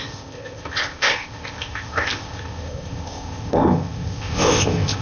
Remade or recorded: remade